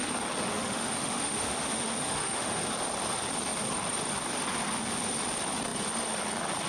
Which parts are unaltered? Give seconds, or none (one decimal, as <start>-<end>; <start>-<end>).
0.0-0.5; 2.6-6.7